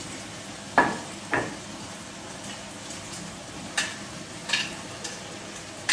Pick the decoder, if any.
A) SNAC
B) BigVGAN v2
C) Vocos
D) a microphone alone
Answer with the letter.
D